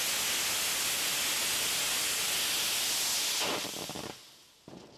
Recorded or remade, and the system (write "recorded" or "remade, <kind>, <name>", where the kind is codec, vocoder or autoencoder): recorded